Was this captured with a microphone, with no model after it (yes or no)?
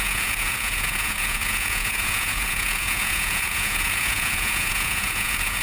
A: no